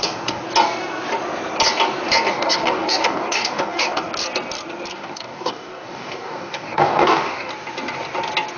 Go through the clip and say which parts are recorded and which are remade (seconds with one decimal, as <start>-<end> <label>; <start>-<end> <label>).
0.0-0.4 remade; 0.4-2.3 recorded; 2.3-4.1 remade; 4.1-4.9 recorded; 4.9-7.5 remade; 7.5-8.6 recorded